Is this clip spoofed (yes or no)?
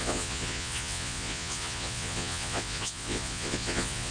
yes